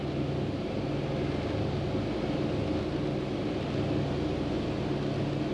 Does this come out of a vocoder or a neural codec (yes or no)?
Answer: no